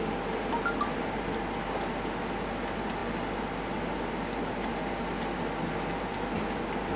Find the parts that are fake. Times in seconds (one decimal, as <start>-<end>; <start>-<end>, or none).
none